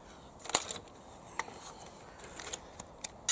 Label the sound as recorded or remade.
recorded